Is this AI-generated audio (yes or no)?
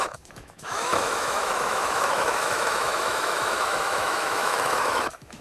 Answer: yes